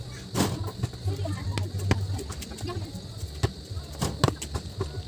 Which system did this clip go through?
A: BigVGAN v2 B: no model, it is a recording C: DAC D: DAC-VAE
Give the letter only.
B